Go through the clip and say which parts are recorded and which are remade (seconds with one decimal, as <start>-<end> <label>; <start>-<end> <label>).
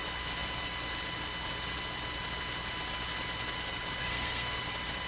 0.0-4.0 recorded; 4.0-4.6 remade; 4.6-5.1 recorded